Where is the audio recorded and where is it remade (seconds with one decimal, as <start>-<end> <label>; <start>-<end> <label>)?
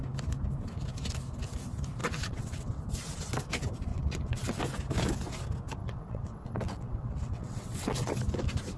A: 0.0-2.0 recorded; 2.0-2.8 remade; 2.8-3.9 recorded; 3.9-4.6 remade; 4.6-5.8 recorded; 5.8-8.1 remade; 8.1-8.8 recorded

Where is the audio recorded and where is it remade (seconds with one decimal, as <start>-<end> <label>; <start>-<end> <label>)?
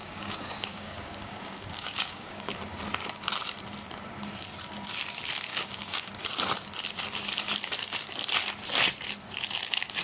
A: 0.0-2.5 remade; 2.5-5.5 recorded; 5.5-6.1 remade; 6.1-10.0 recorded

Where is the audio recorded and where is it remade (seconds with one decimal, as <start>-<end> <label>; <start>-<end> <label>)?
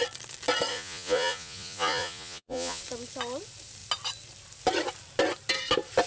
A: 0.0-0.7 recorded; 0.7-2.8 remade; 2.8-6.1 recorded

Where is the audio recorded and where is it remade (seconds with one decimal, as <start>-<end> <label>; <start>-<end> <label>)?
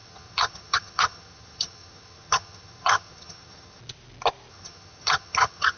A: 0.0-3.8 remade; 3.8-4.5 recorded; 4.5-5.8 remade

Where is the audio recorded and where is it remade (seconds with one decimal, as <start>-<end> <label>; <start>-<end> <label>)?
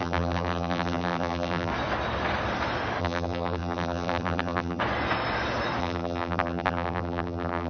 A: 0.0-1.7 remade; 1.7-3.0 recorded; 3.0-4.8 remade; 4.8-5.8 recorded; 5.8-7.7 remade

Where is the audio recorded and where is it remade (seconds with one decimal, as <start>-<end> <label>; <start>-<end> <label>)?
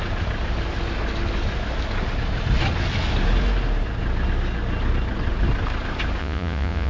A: 0.0-6.2 recorded; 6.2-6.9 remade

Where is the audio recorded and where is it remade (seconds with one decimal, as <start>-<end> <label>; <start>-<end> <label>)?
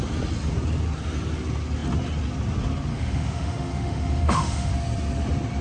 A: 0.0-2.9 recorded; 2.9-4.7 remade; 4.7-5.6 recorded